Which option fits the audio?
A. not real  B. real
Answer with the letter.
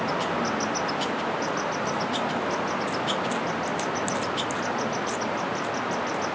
B